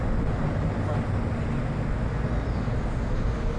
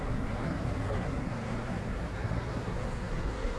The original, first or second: first